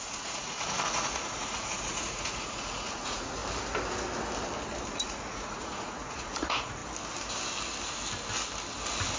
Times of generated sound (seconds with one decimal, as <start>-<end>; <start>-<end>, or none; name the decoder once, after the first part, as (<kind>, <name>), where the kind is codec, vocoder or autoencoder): 0.0-3.4 (vocoder, Vocos); 4.9-6.8